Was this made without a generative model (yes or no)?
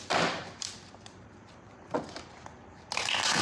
no